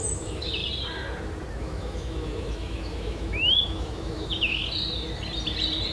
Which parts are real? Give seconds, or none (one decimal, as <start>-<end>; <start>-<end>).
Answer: 0.6-1.6; 4.6-5.9